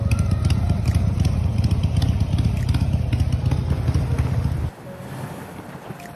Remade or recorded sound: recorded